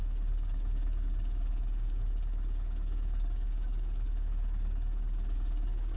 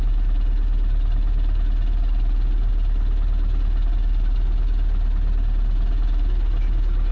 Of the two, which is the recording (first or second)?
second